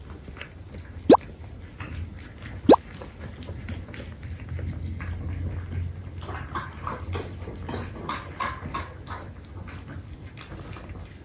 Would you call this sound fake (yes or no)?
no